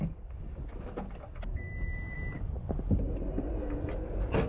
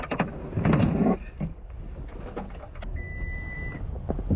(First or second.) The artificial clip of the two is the first